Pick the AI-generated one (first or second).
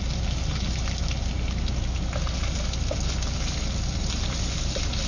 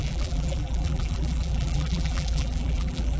second